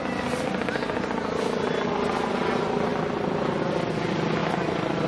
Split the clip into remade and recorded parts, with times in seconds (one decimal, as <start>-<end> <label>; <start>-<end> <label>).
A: 0.0-5.1 recorded

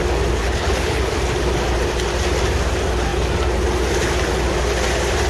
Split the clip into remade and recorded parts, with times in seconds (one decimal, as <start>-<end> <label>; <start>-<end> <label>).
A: 0.0-0.4 recorded; 0.4-1.1 remade; 1.1-5.3 recorded